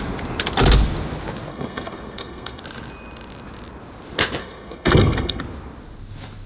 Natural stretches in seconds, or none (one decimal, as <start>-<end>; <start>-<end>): 0.0-1.5; 2.6-4.4; 5.4-6.5